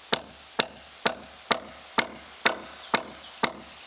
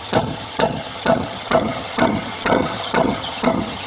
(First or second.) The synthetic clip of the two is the second